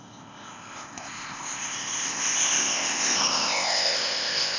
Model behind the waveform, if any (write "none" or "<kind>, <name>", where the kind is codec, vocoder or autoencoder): codec, ZipCodec